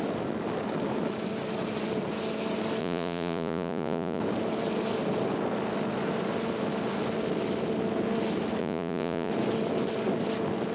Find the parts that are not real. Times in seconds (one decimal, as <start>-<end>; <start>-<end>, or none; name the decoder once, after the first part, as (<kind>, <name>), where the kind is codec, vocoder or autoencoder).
2.8-4.2 (vocoder, Vocos); 8.6-9.3